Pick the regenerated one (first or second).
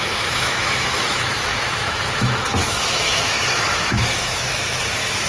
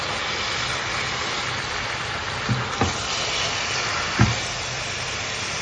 first